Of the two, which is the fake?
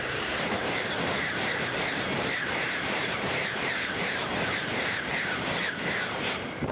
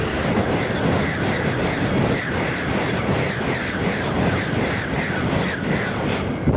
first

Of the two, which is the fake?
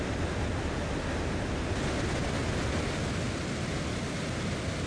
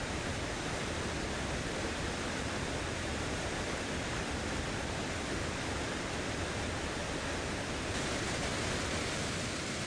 second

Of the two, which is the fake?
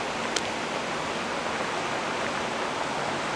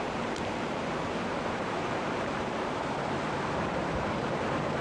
second